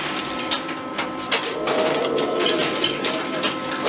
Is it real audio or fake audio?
fake